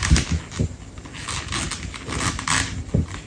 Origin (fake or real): real